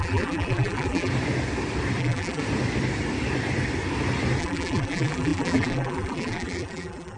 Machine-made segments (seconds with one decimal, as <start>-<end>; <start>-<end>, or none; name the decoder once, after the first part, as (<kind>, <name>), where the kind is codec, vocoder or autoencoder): 0.0-1.1 (vocoder, BigVGAN v2); 2.0-2.4; 4.4-7.2